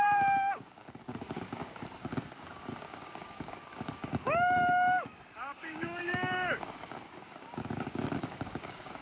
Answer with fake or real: fake